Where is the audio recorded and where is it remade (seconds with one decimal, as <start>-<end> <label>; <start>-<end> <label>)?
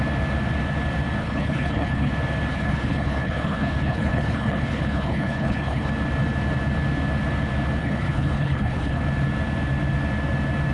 0.0-1.2 recorded; 1.2-2.1 remade; 2.1-2.5 recorded; 2.5-5.9 remade; 5.9-7.8 recorded; 7.8-9.0 remade; 9.0-10.7 recorded